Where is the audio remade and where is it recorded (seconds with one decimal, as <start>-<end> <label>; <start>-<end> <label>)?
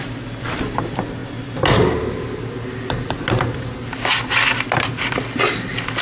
0.0-6.0 recorded